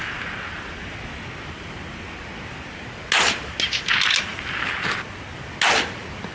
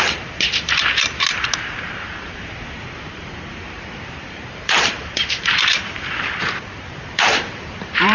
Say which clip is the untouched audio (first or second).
first